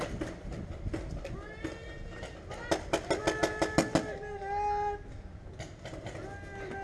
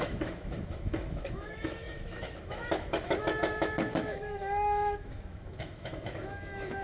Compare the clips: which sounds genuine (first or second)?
first